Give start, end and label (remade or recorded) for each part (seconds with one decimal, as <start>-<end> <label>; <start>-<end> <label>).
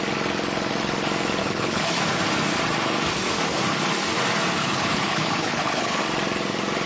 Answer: 0.0-1.4 recorded; 1.4-2.0 remade; 2.0-4.6 recorded; 4.6-6.0 remade; 6.0-6.9 recorded